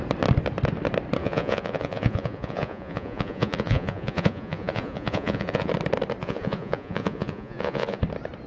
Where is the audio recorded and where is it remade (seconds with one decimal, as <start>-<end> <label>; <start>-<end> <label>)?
0.0-1.2 recorded; 1.2-5.7 remade; 5.7-6.2 recorded; 6.2-8.0 remade; 8.0-8.5 recorded